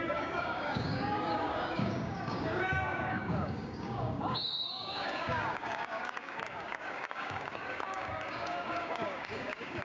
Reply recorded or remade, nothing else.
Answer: remade